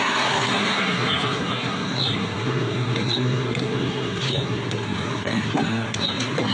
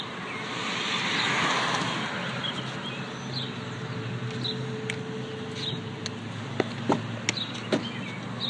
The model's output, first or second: first